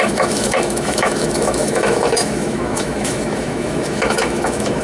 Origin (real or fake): fake